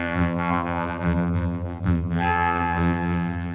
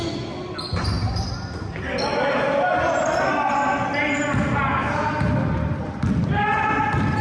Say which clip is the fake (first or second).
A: first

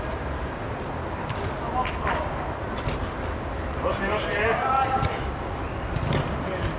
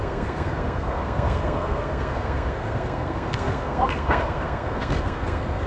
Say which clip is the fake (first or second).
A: second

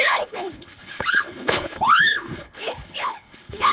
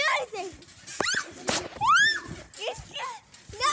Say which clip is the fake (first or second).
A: first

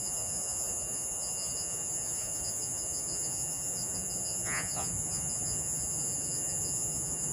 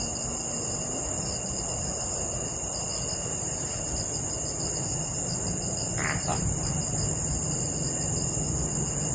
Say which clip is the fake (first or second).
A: first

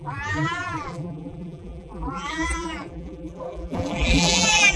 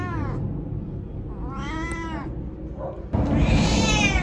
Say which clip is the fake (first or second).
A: first